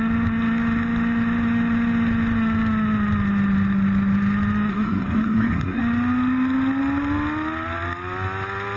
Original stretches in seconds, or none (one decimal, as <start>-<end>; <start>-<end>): 0.0-4.7; 5.8-8.8